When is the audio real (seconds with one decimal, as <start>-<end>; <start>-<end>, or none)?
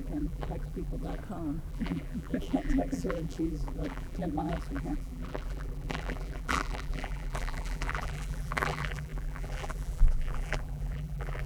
1.2-1.7